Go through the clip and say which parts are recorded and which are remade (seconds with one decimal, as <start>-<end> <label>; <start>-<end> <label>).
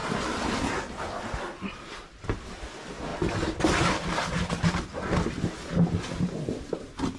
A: 0.0-7.2 recorded